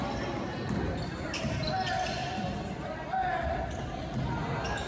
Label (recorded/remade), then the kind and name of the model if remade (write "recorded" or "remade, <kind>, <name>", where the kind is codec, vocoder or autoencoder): recorded